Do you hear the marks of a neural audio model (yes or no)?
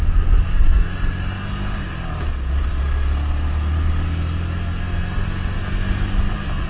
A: no